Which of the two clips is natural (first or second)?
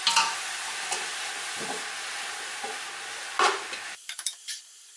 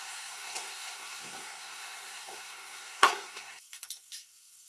first